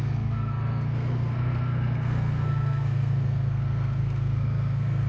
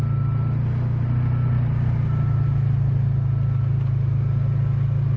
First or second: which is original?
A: second